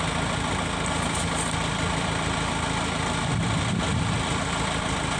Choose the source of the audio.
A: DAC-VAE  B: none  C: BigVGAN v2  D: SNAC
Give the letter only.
B